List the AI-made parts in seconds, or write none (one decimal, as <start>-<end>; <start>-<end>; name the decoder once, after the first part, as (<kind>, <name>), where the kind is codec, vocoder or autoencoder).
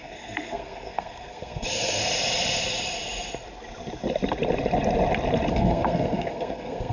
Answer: 0.0-2.0 (codec, SNAC); 5.5-6.9